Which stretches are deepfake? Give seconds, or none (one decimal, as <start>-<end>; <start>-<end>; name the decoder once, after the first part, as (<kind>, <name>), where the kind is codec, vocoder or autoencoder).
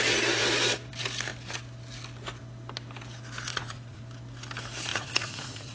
3.5-4.0 (vocoder, Vocos); 4.9-5.7